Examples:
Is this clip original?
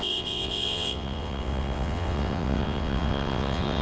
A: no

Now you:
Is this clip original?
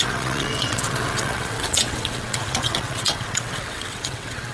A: no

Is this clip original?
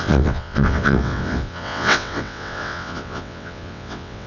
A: no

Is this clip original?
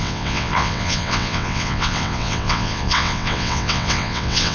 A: no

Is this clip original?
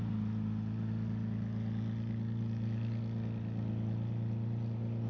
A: yes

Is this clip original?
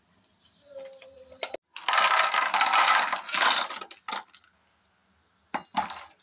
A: yes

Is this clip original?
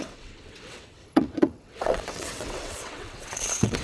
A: no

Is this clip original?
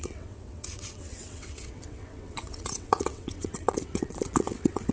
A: no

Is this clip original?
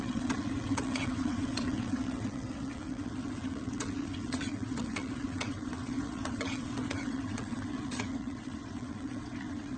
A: no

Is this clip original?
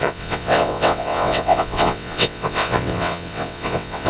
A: no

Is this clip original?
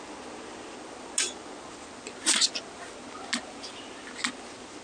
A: yes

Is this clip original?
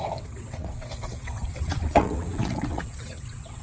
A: no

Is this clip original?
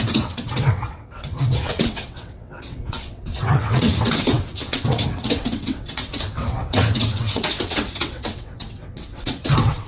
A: no